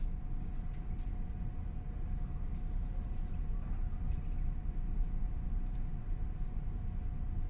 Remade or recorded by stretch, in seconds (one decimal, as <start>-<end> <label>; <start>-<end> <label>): 0.0-1.1 recorded; 1.1-3.5 remade; 3.5-5.0 recorded; 5.0-6.8 remade; 6.8-7.5 recorded